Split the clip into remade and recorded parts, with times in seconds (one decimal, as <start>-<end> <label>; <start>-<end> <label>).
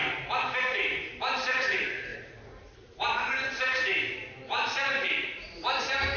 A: 0.0-0.6 recorded; 0.6-6.2 remade